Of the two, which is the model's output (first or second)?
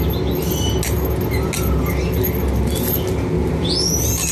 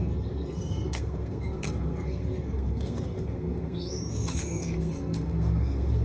second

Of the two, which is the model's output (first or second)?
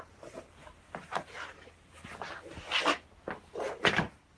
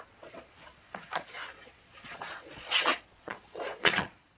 second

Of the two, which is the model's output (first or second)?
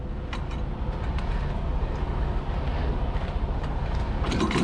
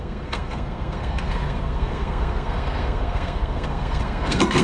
second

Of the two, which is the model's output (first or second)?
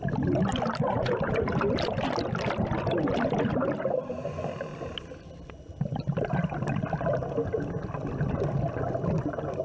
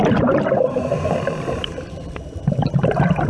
second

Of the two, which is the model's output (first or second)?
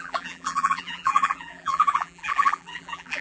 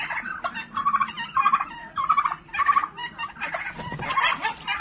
first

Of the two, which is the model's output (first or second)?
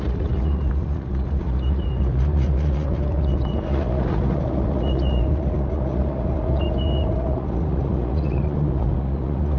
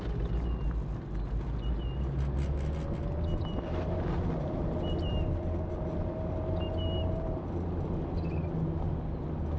first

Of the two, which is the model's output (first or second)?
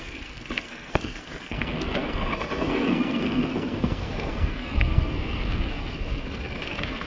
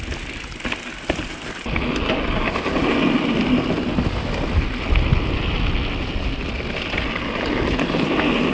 first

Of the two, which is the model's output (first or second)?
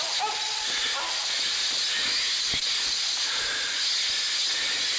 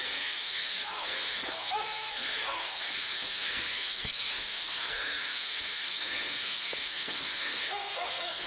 second